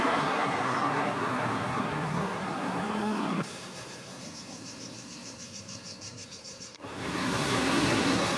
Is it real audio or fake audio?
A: fake